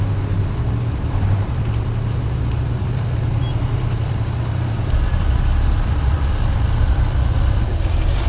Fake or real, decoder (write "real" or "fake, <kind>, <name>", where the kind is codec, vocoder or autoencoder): real